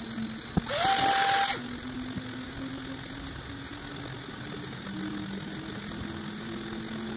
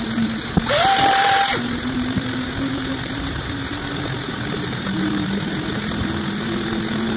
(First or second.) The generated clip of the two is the second